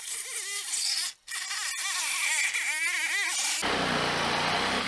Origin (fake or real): real